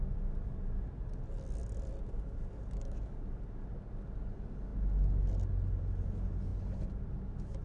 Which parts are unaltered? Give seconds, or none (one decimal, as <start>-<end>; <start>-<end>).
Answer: 0.0-7.6